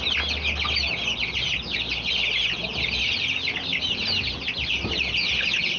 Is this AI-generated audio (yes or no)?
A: no